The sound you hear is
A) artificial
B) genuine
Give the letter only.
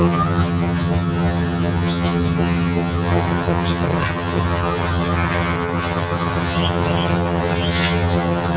A